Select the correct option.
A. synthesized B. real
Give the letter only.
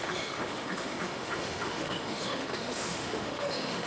A